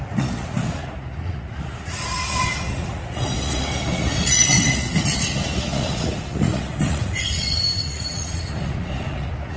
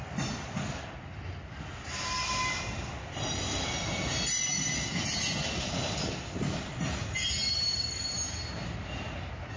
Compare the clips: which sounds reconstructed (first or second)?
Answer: first